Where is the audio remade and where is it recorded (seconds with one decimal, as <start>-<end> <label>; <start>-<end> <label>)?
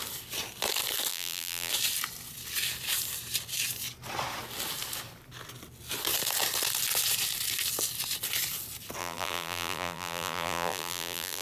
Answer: 0.0-1.1 recorded; 1.1-1.7 remade; 1.7-9.0 recorded; 9.0-11.4 remade